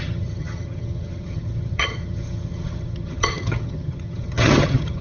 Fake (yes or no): yes